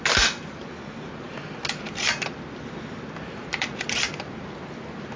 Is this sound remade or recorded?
recorded